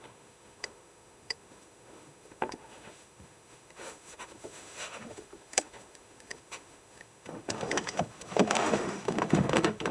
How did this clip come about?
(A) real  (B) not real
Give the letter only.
B